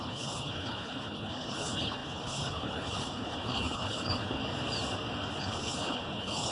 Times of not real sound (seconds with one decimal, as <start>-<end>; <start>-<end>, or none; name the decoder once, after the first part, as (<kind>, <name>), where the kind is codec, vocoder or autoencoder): 0.0-4.4 (codec, HILCodec); 5.4-6.5